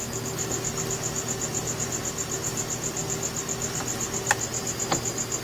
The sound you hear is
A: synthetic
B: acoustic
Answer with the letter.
B